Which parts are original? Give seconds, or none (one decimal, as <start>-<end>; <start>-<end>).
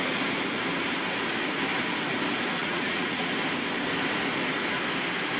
0.0-2.6; 3.3-5.4